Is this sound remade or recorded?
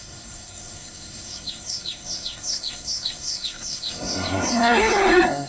remade